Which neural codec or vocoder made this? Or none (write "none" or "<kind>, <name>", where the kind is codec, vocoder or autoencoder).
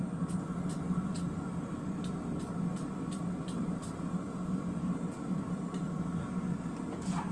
none